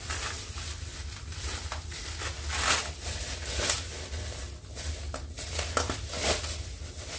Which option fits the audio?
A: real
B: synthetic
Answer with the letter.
A